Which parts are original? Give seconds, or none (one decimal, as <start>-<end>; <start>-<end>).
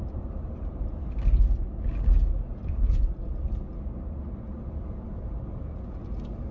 1.1-6.5